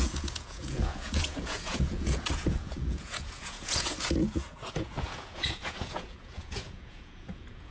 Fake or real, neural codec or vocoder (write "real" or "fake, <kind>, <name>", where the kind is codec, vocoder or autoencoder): fake, vocoder, Vocos